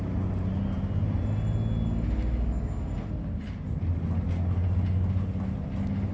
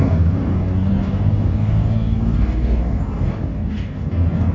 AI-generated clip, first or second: second